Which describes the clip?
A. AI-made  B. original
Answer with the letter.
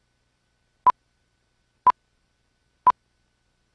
B